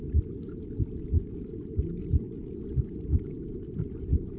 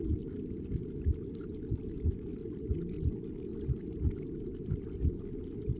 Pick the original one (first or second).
second